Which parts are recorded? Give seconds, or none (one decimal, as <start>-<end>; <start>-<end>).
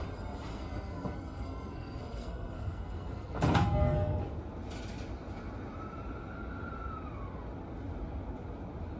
0.0-0.5; 4.2-9.0